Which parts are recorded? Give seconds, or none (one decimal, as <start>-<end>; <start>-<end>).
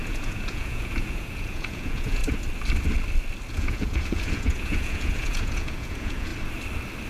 2.2-3.5; 6.3-7.1